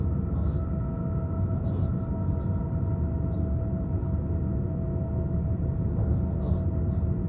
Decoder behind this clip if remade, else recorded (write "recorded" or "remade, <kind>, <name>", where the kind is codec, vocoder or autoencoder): recorded